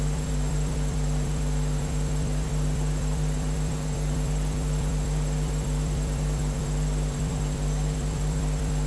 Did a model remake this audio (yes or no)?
yes